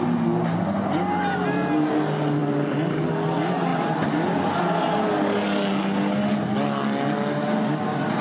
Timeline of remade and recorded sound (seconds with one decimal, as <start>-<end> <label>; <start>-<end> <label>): 0.0-8.2 recorded